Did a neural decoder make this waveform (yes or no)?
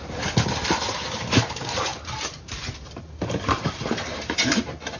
yes